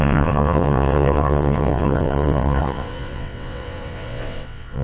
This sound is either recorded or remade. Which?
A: remade